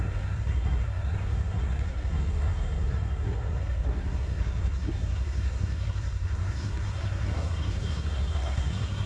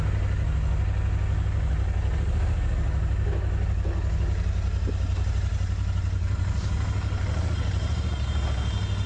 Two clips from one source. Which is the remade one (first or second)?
first